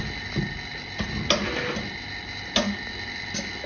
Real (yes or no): yes